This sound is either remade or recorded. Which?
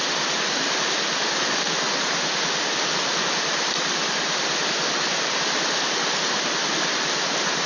recorded